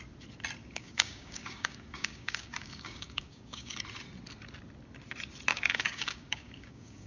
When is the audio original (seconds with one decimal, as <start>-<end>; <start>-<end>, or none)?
0.0-0.6; 3.8-5.5